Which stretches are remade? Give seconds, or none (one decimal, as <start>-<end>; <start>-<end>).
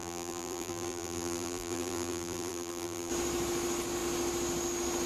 0.0-3.1